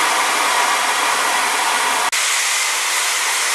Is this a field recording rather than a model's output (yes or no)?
yes